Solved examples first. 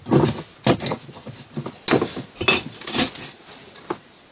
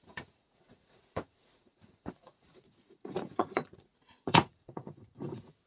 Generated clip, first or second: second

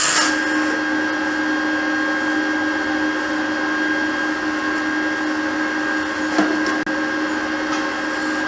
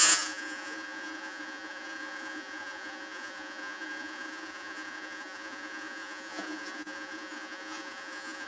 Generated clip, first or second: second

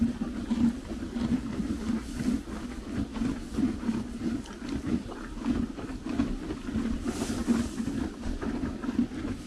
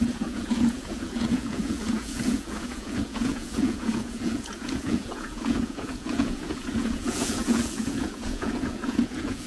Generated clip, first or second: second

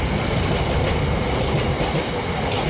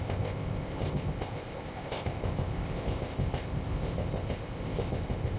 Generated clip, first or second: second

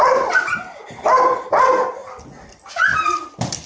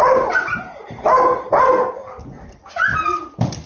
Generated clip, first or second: first